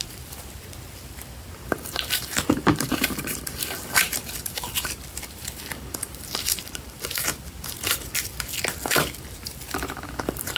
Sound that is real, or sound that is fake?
fake